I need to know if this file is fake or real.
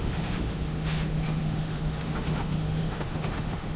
fake